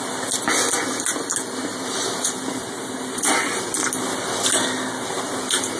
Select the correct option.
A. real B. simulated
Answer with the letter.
A